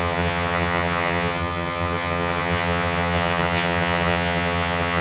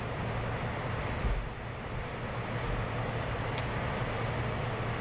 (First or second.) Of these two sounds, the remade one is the first